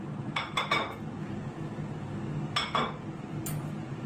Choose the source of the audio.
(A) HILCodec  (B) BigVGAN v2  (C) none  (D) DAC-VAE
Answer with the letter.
C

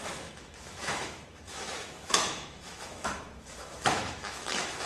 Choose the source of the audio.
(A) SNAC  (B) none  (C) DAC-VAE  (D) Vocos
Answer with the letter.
C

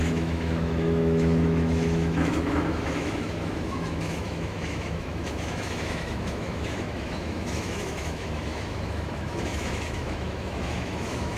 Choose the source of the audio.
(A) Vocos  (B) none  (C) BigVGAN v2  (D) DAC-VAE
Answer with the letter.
D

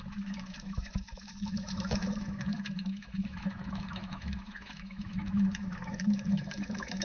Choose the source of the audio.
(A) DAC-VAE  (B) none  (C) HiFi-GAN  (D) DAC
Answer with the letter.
A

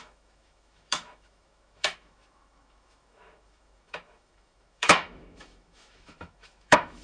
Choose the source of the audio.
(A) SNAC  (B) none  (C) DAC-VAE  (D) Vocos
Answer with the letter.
C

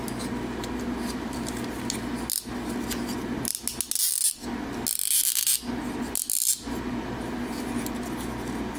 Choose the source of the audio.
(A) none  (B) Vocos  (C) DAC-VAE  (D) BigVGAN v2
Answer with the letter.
A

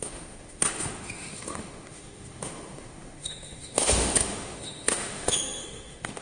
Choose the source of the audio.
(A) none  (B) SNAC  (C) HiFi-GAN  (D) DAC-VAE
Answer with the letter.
D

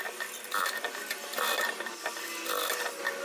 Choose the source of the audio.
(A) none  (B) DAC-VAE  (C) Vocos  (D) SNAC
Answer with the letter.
A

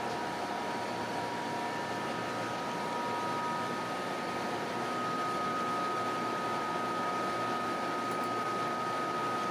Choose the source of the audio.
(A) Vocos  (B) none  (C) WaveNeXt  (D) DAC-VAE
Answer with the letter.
B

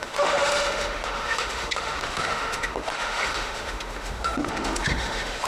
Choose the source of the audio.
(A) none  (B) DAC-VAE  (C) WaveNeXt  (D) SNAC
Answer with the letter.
B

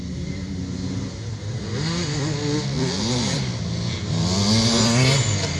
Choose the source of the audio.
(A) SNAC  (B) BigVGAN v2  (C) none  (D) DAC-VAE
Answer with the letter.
C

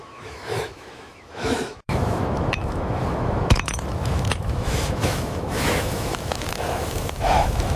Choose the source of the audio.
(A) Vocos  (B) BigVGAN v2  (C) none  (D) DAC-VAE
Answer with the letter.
D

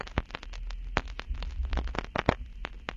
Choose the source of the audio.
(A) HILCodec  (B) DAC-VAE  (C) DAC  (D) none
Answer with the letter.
D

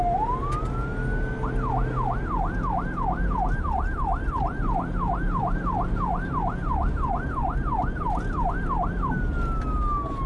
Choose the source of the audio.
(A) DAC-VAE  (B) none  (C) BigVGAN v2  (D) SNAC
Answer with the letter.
B